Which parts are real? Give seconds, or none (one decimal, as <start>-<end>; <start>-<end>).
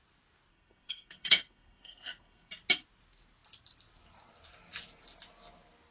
0.0-0.5; 2.5-5.9